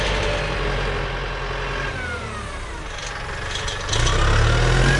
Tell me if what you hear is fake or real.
real